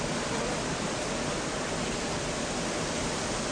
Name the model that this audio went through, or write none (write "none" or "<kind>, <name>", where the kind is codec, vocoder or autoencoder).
none